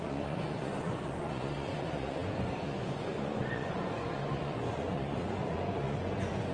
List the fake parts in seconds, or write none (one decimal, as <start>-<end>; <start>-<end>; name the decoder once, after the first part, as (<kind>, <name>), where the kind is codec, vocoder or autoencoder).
0.0-6.5 (vocoder, Vocos)